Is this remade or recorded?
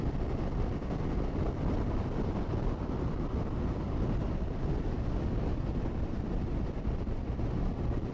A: recorded